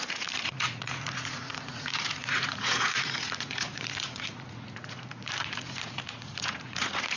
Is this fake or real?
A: fake